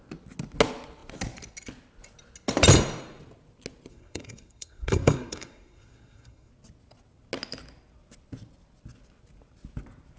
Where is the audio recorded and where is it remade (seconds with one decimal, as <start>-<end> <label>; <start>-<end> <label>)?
0.0-3.9 recorded; 3.9-6.5 remade; 6.5-10.2 recorded

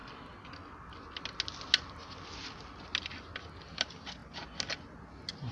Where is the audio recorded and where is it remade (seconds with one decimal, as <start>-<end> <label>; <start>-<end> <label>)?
0.0-5.5 recorded

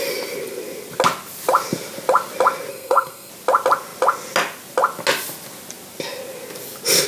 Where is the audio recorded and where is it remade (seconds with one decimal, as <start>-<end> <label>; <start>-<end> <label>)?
0.0-2.7 recorded; 2.7-3.3 remade; 3.3-7.1 recorded